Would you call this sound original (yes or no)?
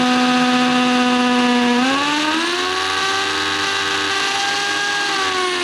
yes